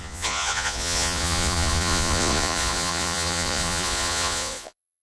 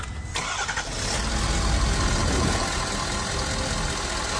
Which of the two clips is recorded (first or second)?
second